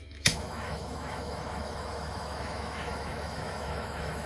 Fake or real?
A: fake